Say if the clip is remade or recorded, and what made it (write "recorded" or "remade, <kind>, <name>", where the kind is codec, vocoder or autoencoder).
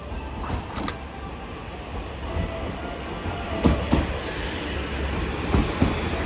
recorded